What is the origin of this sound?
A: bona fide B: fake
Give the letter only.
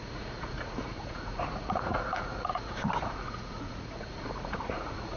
B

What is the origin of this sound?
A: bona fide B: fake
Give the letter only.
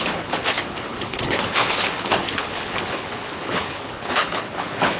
B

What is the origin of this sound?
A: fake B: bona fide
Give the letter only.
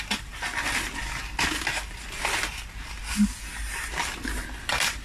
B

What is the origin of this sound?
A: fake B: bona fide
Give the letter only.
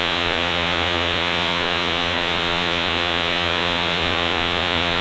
A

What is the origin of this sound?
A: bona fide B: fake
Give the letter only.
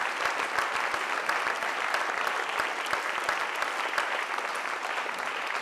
A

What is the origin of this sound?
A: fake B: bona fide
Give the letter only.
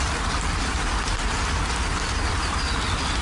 B